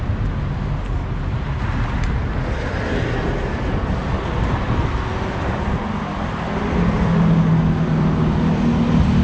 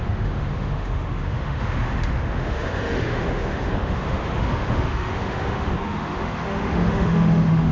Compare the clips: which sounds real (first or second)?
first